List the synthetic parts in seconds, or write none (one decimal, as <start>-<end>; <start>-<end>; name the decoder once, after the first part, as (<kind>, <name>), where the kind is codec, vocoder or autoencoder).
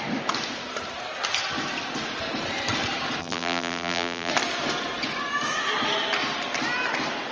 3.2-4.3 (vocoder, BigVGAN v2)